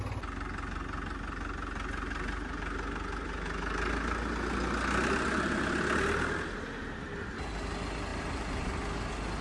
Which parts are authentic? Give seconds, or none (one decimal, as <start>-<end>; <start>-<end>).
0.0-8.1; 8.7-9.4